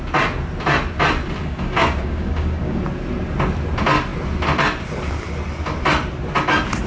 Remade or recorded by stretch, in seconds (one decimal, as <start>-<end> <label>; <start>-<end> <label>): 0.0-1.4 recorded; 1.4-2.8 remade; 2.8-6.9 recorded